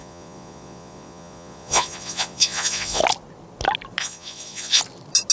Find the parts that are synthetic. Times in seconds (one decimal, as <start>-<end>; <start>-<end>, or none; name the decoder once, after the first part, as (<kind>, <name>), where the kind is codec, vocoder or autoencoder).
0.0-3.0 (vocoder, Vocos); 4.0-4.8